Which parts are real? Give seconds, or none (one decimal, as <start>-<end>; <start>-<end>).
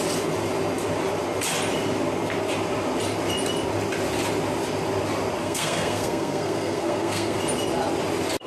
0.0-5.4; 7.4-8.5